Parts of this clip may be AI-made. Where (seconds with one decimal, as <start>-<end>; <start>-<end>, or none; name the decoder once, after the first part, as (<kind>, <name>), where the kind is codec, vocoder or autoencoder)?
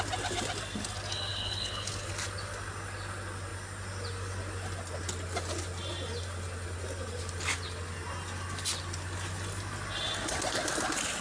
1.3-2.1 (codec, HILCodec)